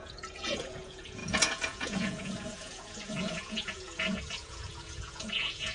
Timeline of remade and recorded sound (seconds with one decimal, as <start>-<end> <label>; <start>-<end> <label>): 0.0-5.7 remade